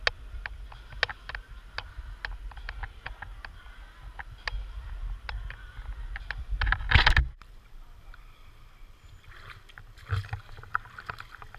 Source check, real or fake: real